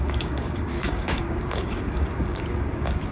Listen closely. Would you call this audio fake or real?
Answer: fake